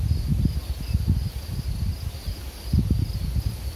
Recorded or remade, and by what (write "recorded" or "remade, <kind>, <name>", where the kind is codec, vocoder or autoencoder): recorded